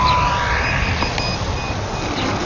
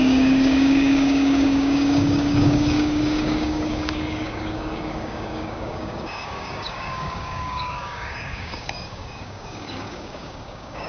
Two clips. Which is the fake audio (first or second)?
second